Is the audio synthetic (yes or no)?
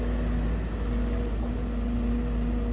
no